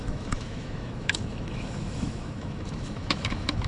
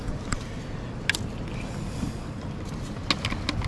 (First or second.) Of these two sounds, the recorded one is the second